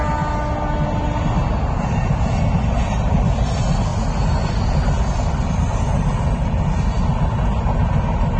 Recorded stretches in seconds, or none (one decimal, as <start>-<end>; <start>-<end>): 0.0-8.4